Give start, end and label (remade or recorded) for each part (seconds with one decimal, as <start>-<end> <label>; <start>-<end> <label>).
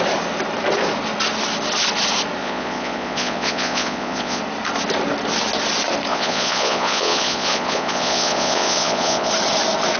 0.0-2.4 recorded; 2.4-4.4 remade; 4.4-6.1 recorded; 6.1-9.3 remade; 9.3-10.0 recorded